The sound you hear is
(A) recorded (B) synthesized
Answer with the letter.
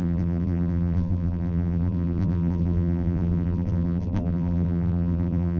B